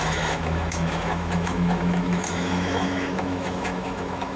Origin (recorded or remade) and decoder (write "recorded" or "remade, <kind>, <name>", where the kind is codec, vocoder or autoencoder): remade, autoencoder, DAC-VAE